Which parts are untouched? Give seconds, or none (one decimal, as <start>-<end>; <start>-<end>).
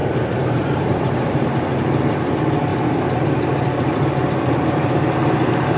2.3-2.7